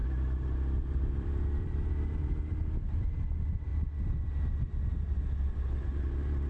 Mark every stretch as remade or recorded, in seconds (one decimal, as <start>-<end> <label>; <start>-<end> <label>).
0.0-1.9 remade; 1.9-6.5 recorded